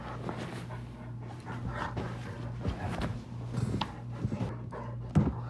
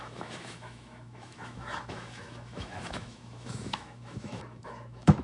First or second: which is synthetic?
second